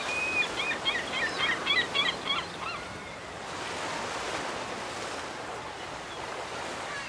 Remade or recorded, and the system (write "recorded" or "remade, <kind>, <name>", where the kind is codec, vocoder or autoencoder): recorded